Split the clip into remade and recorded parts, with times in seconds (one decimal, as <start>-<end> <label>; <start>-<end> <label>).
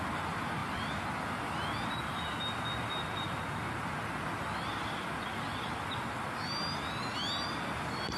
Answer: 0.0-8.2 recorded